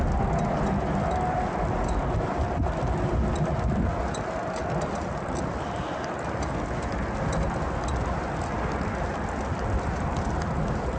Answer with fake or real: real